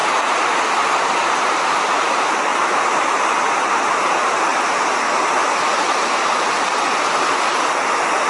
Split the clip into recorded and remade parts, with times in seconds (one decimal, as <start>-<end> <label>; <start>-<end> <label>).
0.0-1.0 recorded; 1.0-4.5 remade; 4.5-8.3 recorded